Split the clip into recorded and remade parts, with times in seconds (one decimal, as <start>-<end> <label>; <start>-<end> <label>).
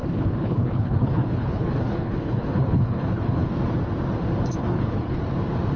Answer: 0.0-3.5 remade; 3.5-4.6 recorded; 4.6-5.2 remade; 5.2-5.8 recorded